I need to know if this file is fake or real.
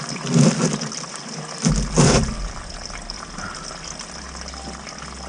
real